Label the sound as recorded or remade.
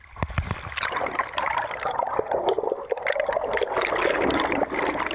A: recorded